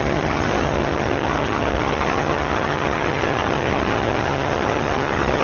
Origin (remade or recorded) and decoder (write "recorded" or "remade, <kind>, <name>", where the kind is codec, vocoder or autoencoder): remade, vocoder, HiFi-GAN